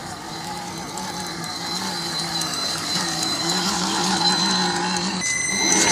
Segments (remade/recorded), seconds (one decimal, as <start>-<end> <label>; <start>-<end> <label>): 0.0-0.7 remade; 0.7-1.3 recorded; 1.3-4.3 remade; 4.3-5.9 recorded